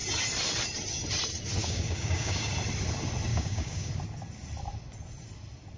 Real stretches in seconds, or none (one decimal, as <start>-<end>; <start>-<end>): 0.0-1.6; 2.5-3.3; 3.9-5.8